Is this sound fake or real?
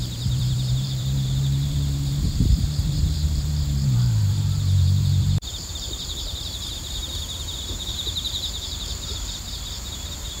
fake